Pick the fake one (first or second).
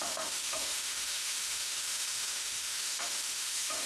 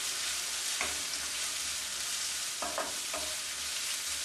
first